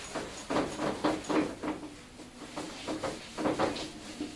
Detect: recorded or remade recorded